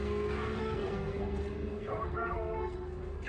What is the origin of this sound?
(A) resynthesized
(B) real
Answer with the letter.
A